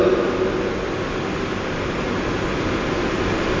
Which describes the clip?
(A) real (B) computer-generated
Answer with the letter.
A